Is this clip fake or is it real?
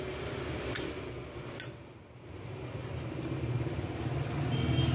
real